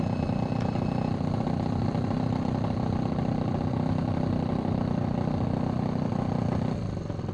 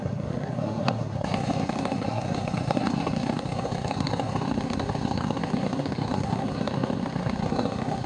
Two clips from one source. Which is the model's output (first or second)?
second